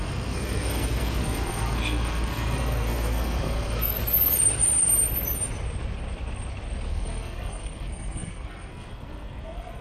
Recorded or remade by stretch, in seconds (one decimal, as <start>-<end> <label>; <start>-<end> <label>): 0.0-4.0 remade; 4.0-6.9 recorded; 6.9-9.8 remade